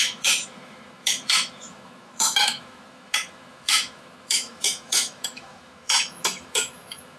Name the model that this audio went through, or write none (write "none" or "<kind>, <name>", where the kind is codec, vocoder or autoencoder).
autoencoder, DAC-VAE